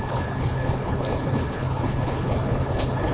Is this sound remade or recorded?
remade